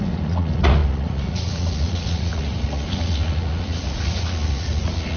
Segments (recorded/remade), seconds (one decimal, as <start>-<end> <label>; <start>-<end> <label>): 0.0-5.2 remade

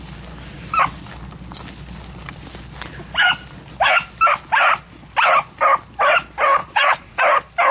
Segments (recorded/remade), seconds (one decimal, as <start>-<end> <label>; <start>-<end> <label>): 0.0-6.6 recorded; 6.6-7.2 remade; 7.2-7.7 recorded

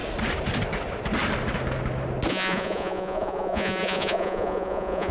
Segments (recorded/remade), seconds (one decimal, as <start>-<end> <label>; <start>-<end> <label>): 0.0-2.3 recorded; 2.3-5.1 remade

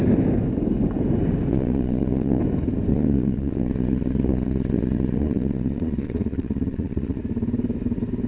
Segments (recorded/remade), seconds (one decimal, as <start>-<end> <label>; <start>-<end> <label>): 0.0-1.5 recorded; 1.5-2.4 remade; 2.4-2.9 recorded; 2.9-7.2 remade; 7.2-8.3 recorded